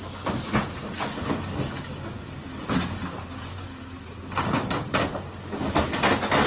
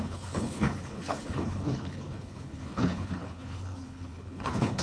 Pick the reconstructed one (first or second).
second